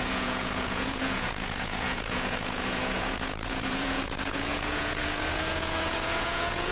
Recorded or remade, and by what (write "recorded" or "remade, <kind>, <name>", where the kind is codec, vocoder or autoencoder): remade, vocoder, Vocos